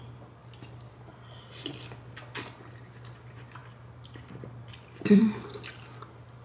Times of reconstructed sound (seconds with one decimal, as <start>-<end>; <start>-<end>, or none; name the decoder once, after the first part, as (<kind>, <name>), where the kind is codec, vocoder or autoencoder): 0.0-3.6 (vocoder, BigVGAN v2); 4.7-5.2; 5.8-6.4